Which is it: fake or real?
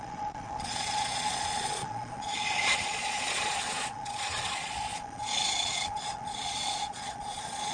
fake